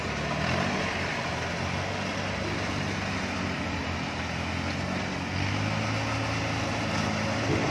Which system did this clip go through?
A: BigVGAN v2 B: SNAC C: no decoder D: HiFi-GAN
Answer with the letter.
C